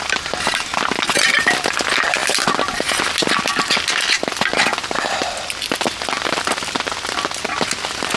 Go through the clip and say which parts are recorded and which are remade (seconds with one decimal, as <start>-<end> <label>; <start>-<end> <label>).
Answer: 0.0-5.2 recorded; 5.2-6.5 remade; 6.5-8.2 recorded